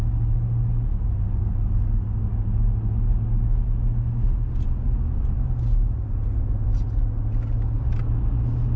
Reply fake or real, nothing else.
real